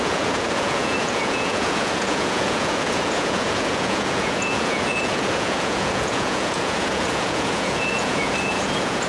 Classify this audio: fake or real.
fake